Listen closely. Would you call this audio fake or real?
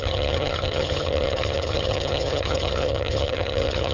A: fake